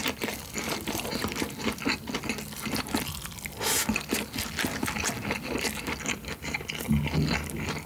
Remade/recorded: recorded